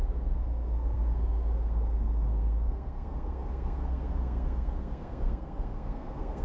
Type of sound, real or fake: fake